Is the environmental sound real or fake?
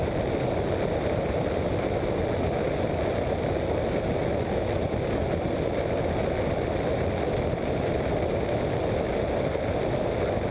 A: real